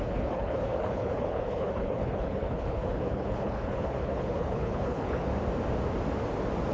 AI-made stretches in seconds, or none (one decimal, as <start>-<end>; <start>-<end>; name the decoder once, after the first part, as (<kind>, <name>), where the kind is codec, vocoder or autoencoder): 0.0-5.3 (codec, HILCodec)